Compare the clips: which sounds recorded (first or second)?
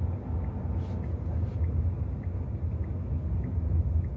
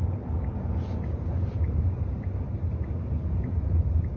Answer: first